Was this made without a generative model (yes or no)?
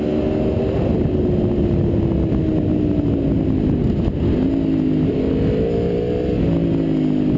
yes